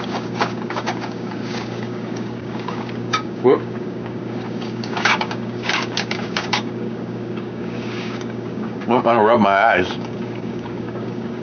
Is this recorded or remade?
remade